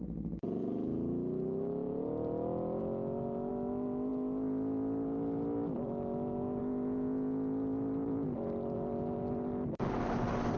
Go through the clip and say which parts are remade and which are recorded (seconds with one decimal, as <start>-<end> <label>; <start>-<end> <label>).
0.0-0.6 recorded; 0.6-2.0 remade; 2.0-2.8 recorded; 2.8-3.5 remade; 3.5-10.6 recorded